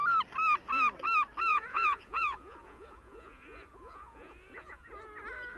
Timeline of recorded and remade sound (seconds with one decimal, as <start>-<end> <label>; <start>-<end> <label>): 0.0-1.5 recorded; 1.5-4.9 remade; 4.9-5.6 recorded